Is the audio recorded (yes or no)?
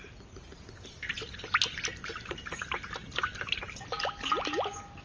yes